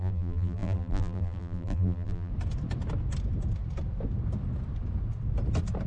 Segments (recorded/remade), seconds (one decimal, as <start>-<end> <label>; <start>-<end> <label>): 0.0-2.3 remade; 2.3-5.9 recorded

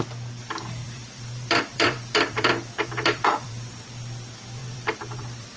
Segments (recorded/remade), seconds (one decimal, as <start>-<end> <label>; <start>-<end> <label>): 0.0-0.8 recorded; 0.8-3.7 remade; 3.7-4.6 recorded; 4.6-5.6 remade

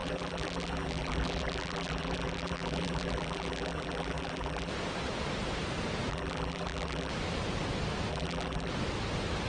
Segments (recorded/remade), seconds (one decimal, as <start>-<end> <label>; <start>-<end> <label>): 0.0-4.7 remade; 4.7-6.1 recorded; 6.1-7.1 remade; 7.1-8.1 recorded; 8.1-8.7 remade; 8.7-9.5 recorded

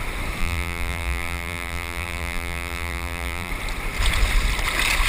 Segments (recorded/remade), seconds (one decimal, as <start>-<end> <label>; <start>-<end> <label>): 0.0-0.4 recorded; 0.4-3.5 remade; 3.5-5.1 recorded

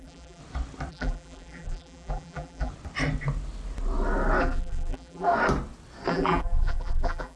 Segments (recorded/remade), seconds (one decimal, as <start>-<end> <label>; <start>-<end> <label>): 0.0-0.4 remade; 0.4-0.9 recorded; 0.9-2.7 remade; 2.7-4.4 recorded; 4.4-5.3 remade; 5.3-6.1 recorded; 6.1-7.4 remade

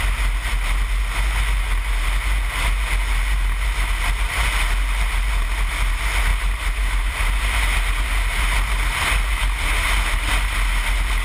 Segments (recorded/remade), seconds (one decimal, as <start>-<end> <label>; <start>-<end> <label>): 0.0-6.3 recorded; 6.3-7.1 remade; 7.1-11.2 recorded